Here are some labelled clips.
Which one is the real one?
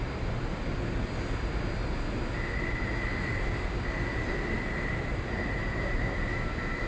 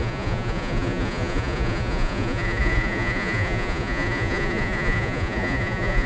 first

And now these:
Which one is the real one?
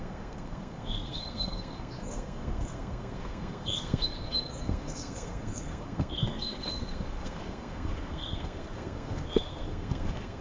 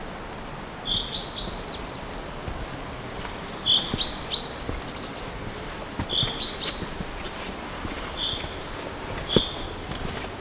second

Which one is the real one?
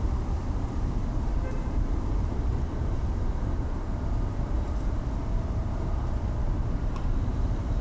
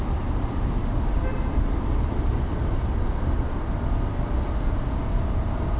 second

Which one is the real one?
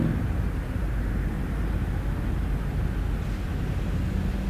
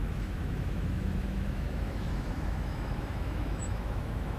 first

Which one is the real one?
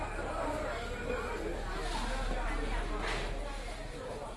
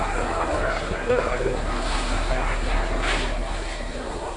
first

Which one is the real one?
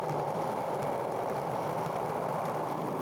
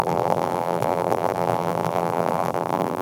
first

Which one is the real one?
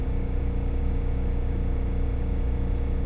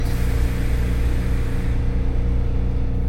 second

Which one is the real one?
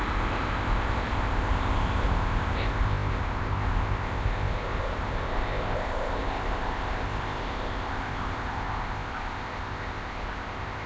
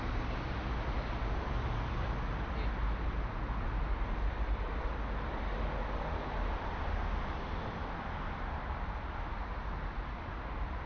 second